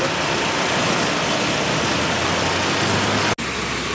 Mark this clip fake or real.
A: real